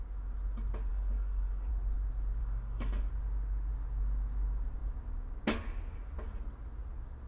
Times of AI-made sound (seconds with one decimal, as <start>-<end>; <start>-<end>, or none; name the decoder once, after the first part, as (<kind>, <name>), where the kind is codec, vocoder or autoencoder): 0.9-1.7 (codec, DAC); 2.4-3.1